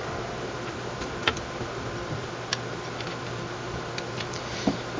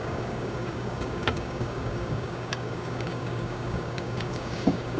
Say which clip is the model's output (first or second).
second